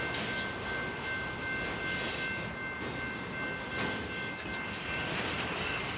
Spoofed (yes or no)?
no